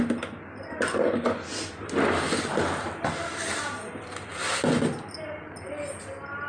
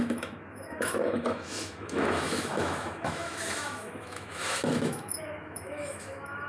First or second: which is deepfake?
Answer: second